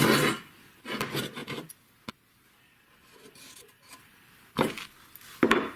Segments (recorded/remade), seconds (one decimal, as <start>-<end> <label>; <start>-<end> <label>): 0.0-1.4 recorded; 1.4-4.9 remade; 4.9-5.8 recorded